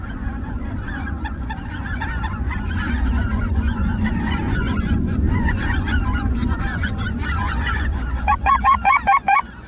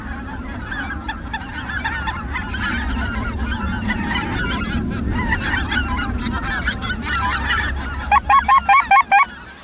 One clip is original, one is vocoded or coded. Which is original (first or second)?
second